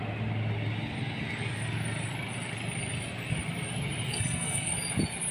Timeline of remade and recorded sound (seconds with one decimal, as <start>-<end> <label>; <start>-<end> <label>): 0.0-4.1 recorded; 4.1-4.7 remade; 4.7-5.3 recorded